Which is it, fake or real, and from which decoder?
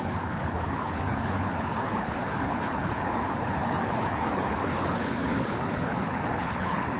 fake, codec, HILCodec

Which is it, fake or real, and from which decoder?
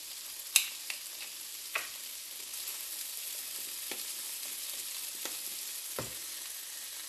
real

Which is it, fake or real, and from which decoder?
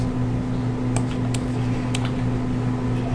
real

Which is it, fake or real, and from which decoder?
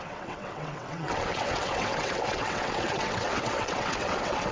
fake, vocoder, WaveNeXt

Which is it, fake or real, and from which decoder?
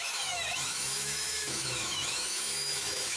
fake, autoencoder, DAC-VAE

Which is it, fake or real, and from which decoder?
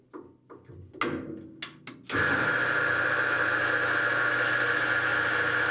real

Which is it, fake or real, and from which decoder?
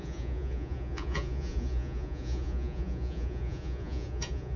fake, vocoder, Vocos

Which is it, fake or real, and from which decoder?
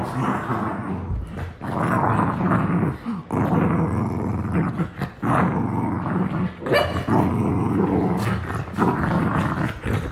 real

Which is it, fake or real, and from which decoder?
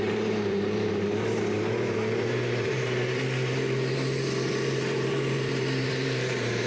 fake, vocoder, BigVGAN v2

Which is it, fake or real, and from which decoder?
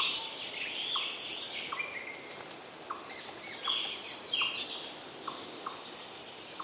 real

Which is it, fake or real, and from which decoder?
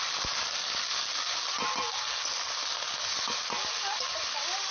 real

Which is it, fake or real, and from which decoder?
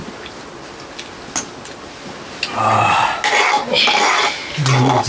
real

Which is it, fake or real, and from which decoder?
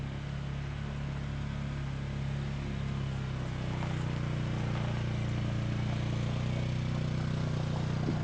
real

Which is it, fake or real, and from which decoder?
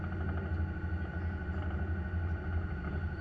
real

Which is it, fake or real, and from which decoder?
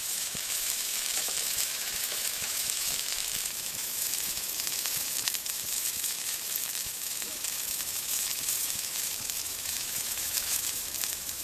fake, autoencoder, DAC-VAE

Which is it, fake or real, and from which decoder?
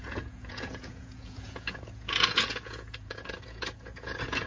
fake, vocoder, Vocos